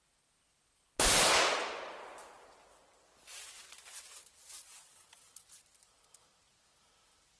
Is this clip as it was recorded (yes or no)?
yes